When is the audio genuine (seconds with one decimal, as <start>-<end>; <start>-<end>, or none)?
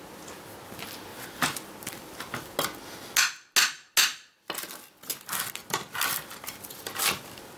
0.0-7.6